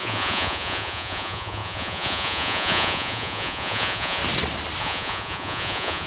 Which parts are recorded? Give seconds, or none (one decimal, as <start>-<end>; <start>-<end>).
4.2-4.8